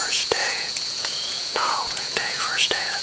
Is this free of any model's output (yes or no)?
no